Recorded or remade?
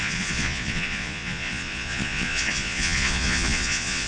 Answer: remade